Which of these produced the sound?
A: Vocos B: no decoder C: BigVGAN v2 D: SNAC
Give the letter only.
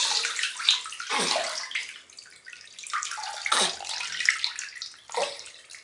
B